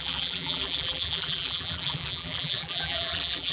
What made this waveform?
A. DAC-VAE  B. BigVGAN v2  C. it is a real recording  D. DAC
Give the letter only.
B